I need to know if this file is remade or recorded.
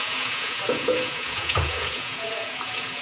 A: remade